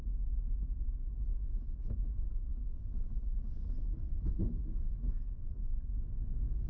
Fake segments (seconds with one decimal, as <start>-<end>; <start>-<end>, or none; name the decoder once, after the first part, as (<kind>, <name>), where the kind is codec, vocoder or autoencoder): none